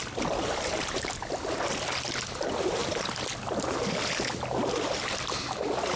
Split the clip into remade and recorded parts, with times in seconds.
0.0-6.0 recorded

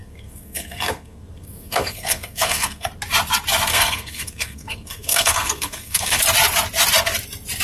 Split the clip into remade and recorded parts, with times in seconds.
0.0-2.9 remade; 2.9-3.7 recorded; 3.7-6.2 remade; 6.2-7.6 recorded

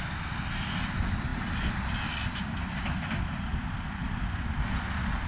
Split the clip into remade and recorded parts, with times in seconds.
0.0-5.3 recorded

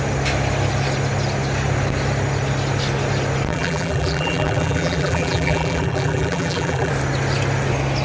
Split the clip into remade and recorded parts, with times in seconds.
0.0-3.5 recorded; 3.5-6.9 remade; 6.9-8.0 recorded

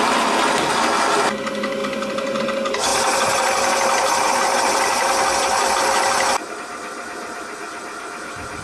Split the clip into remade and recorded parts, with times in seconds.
0.0-8.6 recorded